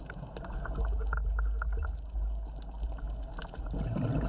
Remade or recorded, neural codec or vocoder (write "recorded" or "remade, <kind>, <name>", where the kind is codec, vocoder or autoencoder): recorded